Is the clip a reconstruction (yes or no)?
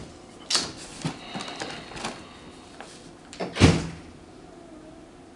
no